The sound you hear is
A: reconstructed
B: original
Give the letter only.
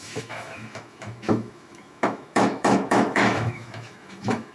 A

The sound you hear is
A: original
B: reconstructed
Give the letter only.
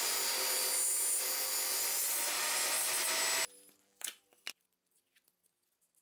A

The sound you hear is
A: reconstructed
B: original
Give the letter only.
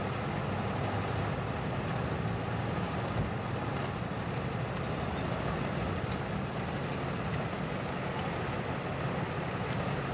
B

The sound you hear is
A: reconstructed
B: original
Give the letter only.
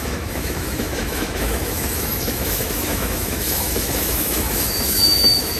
A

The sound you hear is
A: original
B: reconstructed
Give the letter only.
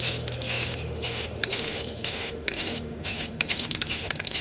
B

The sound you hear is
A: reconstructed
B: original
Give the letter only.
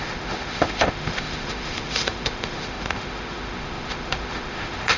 A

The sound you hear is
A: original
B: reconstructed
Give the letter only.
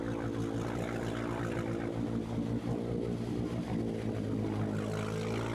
A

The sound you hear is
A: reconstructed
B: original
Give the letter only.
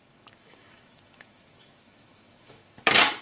A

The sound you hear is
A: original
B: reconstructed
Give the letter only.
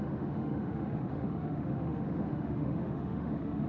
B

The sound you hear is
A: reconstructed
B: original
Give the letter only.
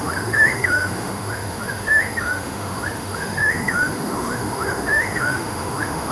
A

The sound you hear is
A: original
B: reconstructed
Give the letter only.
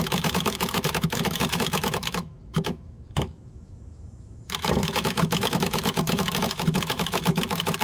B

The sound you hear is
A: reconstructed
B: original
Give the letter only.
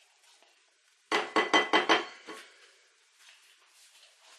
B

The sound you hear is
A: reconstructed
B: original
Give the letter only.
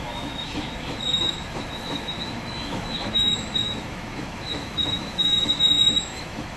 A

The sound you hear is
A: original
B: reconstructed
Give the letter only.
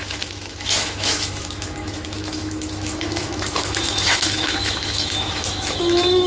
B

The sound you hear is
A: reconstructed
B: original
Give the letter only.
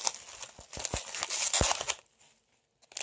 B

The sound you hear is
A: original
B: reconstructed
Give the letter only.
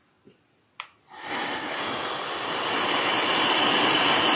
A